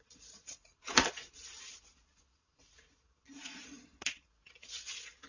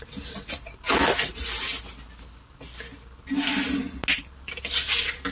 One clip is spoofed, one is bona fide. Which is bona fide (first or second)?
second